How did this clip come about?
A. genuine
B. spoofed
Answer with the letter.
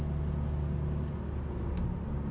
A